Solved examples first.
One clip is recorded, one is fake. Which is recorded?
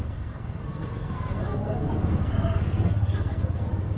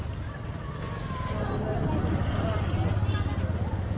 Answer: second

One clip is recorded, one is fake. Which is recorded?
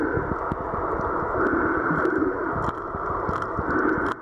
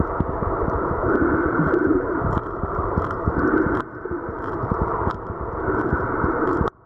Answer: first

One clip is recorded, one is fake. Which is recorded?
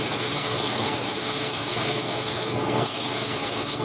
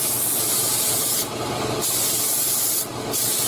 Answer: second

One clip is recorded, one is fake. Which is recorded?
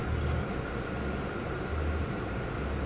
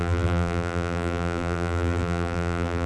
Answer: first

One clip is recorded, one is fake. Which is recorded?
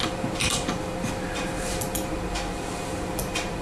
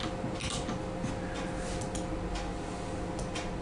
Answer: second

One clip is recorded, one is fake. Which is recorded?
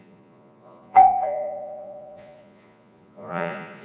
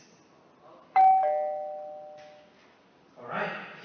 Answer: second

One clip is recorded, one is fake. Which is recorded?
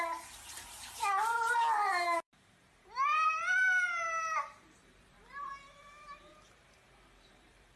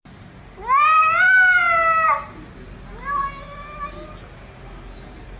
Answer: second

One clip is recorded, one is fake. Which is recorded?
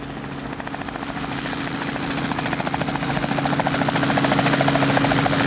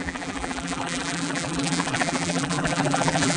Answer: first